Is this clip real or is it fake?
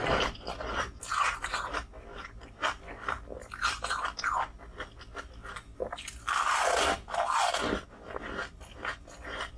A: real